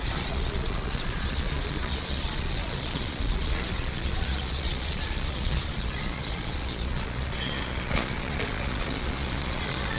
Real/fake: fake